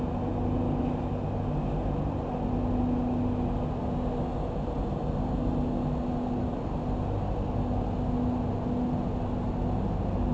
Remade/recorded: recorded